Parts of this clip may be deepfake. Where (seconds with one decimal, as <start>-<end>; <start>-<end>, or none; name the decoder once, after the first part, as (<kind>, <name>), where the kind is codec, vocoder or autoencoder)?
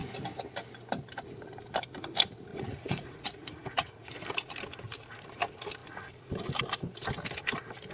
2.5-4.1 (vocoder, Vocos)